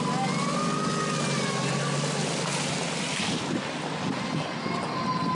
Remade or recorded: recorded